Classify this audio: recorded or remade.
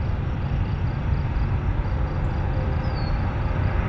recorded